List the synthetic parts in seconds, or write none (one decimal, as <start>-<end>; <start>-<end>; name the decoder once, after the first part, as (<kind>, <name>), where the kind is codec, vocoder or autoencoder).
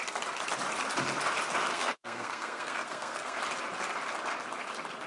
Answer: 1.7-3.4 (codec, SNAC)